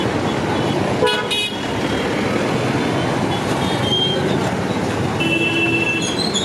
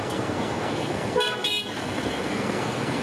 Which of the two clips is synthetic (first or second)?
second